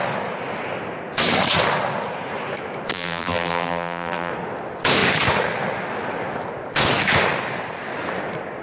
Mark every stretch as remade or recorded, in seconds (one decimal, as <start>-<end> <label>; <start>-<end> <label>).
0.0-2.9 recorded; 2.9-4.3 remade; 4.3-8.6 recorded